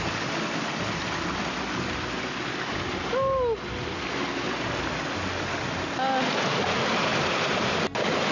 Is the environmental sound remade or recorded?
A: recorded